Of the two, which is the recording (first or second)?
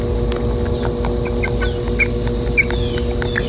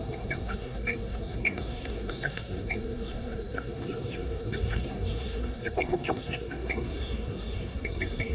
first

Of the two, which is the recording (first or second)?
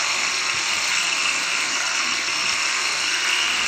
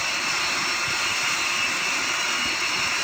second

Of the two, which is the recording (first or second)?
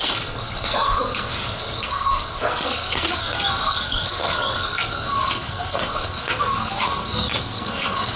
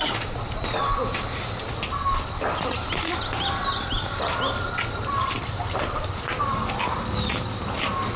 second